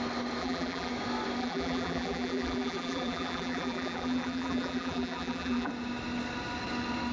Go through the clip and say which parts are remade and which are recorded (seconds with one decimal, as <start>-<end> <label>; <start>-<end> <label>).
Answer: 0.0-0.4 recorded; 0.4-0.9 remade; 0.9-1.4 recorded; 1.4-5.7 remade; 5.7-7.1 recorded